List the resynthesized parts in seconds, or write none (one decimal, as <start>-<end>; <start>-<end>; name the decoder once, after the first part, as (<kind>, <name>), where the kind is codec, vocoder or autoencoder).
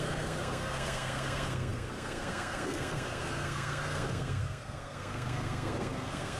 0.0-6.4 (codec, SNAC)